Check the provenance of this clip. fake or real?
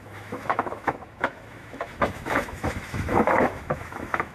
fake